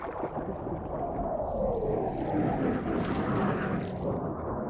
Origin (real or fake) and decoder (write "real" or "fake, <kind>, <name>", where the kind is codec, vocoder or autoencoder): real